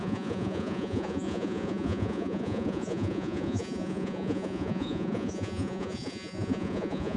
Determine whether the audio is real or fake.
fake